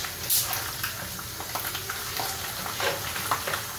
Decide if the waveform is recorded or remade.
recorded